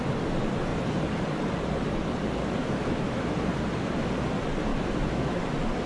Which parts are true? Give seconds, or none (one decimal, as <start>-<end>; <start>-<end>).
0.0-2.6; 3.2-4.7; 5.4-5.9